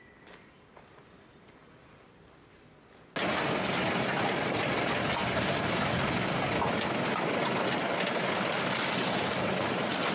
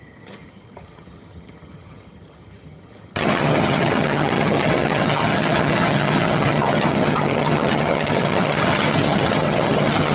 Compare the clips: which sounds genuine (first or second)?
first